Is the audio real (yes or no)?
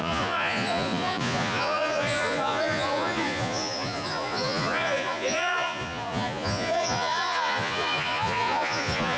no